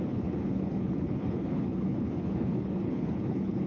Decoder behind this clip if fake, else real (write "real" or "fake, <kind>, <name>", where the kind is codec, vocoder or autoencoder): fake, codec, HILCodec